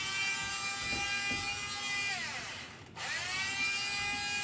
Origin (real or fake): real